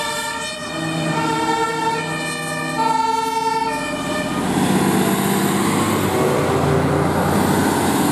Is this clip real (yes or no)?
yes